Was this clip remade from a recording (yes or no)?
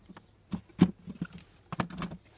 no